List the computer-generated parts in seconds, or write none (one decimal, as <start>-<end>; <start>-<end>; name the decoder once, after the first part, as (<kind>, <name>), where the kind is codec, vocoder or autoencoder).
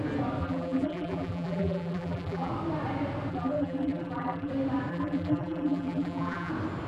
0.4-2.5 (vocoder, BigVGAN v2); 3.3-4.5; 4.9-6.5